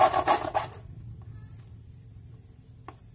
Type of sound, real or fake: real